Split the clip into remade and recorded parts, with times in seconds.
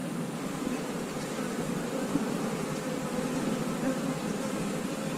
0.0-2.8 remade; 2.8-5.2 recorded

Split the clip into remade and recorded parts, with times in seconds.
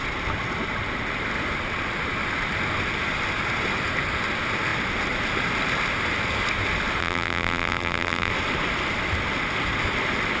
0.0-7.0 recorded; 7.0-8.3 remade; 8.3-10.4 recorded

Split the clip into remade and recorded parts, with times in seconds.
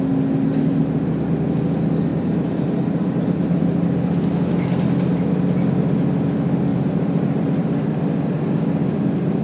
0.0-2.1 recorded; 2.1-3.6 remade; 3.6-6.7 recorded; 6.7-7.2 remade; 7.2-9.4 recorded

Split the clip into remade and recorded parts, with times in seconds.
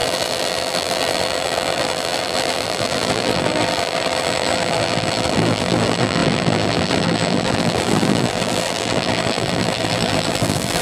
0.0-10.8 remade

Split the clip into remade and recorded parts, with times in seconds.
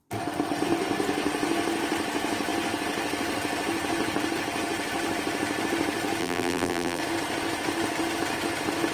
0.0-6.2 recorded; 6.2-7.0 remade; 7.0-8.9 recorded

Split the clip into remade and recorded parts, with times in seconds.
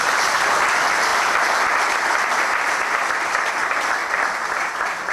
0.0-1.1 recorded; 1.1-3.5 remade; 3.5-4.0 recorded; 4.0-5.1 remade